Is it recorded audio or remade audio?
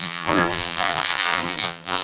remade